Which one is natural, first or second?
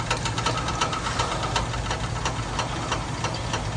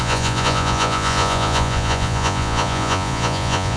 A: first